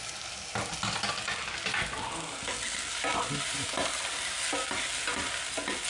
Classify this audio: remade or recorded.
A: recorded